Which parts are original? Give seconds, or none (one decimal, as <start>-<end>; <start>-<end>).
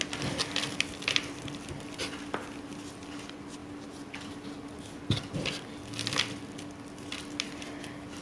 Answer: 0.0-3.6; 4.5-8.2